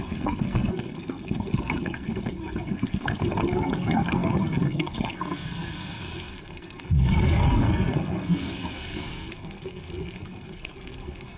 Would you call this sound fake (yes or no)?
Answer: yes